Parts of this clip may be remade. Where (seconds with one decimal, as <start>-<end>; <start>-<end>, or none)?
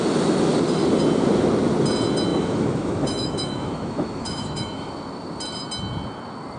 2.3-4.9